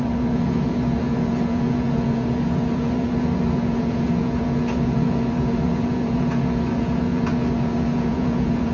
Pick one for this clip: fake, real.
fake